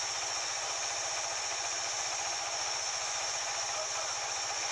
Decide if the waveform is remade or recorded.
remade